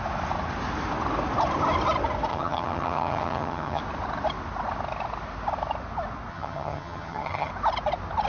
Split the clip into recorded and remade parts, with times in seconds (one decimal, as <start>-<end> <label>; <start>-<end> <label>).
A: 0.0-2.3 recorded; 2.3-3.8 remade; 3.8-6.3 recorded; 6.3-7.5 remade; 7.5-8.3 recorded